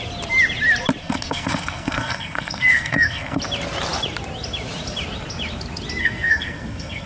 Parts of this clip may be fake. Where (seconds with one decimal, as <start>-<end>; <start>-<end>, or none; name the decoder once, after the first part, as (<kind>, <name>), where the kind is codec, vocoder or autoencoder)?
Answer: 1.0-3.4 (codec, SNAC); 6.0-7.1